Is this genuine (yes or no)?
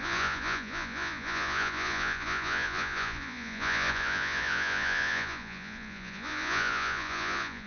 no